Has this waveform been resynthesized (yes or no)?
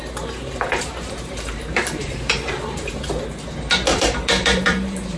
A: yes